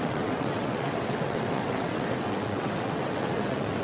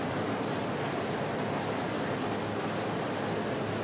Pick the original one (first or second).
second